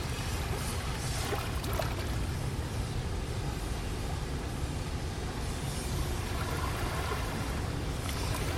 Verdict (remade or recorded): recorded